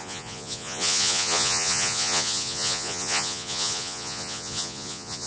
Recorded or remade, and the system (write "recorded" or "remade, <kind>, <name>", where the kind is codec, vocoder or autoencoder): remade, vocoder, Vocos